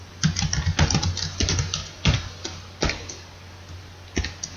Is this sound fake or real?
real